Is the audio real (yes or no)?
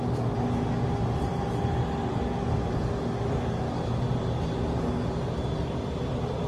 yes